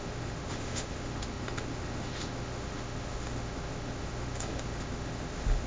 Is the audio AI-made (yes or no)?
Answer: yes